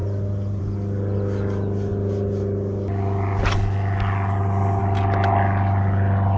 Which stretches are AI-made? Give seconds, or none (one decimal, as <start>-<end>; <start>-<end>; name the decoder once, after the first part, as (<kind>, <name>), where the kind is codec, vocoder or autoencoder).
none